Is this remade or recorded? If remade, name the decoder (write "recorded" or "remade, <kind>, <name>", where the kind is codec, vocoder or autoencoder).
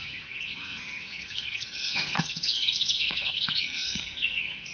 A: remade, codec, SNAC